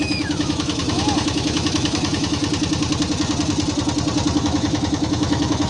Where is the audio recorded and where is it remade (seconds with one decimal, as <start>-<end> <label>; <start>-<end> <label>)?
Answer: 0.0-2.4 remade; 2.4-4.4 recorded; 4.4-5.7 remade